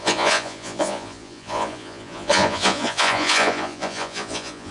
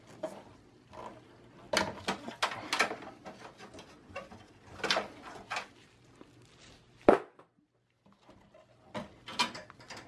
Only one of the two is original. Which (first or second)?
second